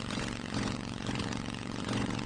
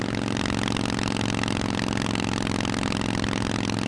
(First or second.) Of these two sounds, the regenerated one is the first